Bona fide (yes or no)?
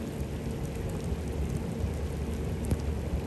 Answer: yes